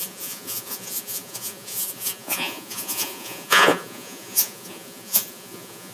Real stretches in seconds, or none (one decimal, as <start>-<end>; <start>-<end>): none